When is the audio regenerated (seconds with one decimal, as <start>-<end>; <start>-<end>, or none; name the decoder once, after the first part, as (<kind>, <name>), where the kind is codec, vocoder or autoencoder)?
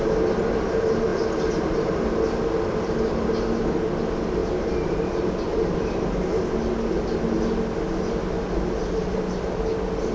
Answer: none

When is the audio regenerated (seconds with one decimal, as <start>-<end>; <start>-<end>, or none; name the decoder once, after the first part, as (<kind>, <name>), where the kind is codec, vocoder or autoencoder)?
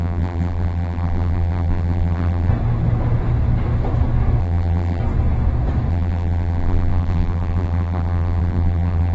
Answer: 0.0-2.5 (vocoder, BigVGAN v2); 4.4-5.0; 5.9-9.1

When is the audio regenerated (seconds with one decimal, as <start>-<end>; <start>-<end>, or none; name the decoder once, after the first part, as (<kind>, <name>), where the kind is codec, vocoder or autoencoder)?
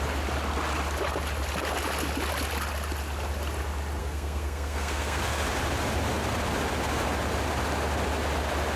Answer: 4.0-5.2 (codec, SNAC)